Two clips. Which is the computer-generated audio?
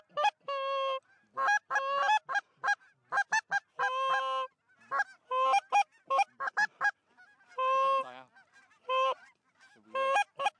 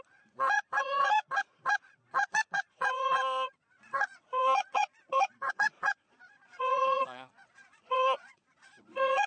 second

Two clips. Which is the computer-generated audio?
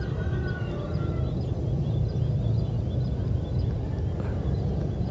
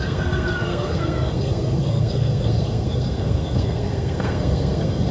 second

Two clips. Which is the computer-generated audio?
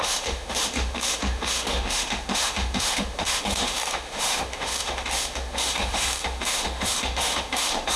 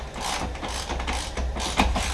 first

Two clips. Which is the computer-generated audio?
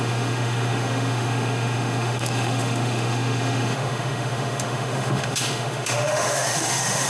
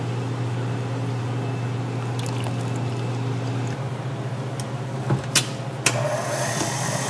first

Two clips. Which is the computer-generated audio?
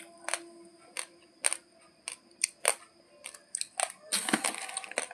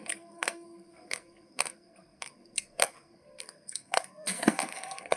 second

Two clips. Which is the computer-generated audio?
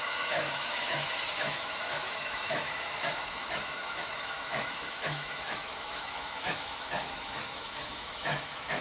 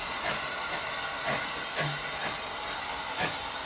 first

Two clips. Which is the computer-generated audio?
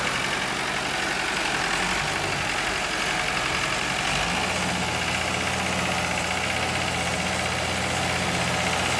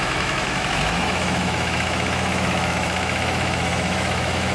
second